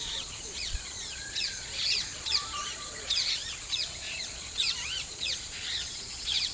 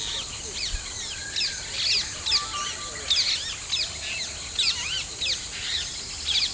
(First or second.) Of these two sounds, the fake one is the first